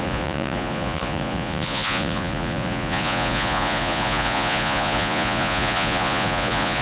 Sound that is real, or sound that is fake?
fake